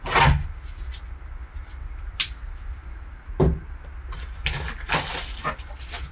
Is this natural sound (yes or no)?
yes